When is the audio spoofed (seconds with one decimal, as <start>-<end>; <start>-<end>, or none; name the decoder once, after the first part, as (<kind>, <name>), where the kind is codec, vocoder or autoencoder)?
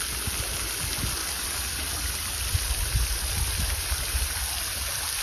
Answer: 1.2-4.3 (vocoder, BigVGAN v2)